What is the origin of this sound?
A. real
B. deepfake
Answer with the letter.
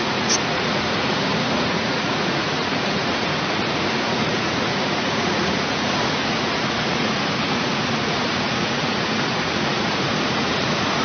B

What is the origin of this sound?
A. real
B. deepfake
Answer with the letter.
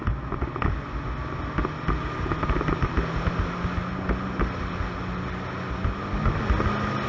A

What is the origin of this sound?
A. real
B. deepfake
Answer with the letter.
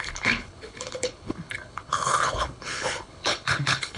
B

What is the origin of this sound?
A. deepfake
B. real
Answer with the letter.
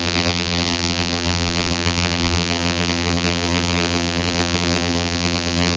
A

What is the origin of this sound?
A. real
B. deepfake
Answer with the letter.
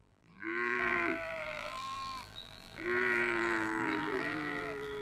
B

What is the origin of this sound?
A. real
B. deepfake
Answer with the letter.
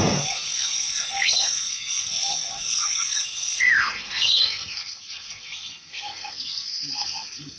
B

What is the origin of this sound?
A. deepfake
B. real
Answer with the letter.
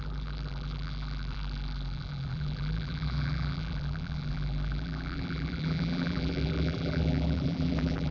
A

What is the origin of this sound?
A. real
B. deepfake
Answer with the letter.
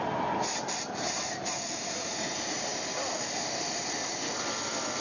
A